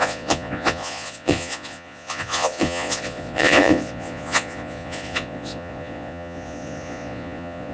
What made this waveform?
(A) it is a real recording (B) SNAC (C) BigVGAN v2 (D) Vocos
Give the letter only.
D